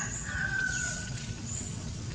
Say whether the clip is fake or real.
fake